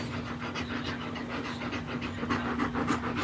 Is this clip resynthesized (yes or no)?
no